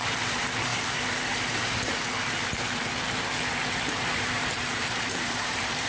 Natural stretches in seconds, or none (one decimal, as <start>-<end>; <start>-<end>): 0.7-4.2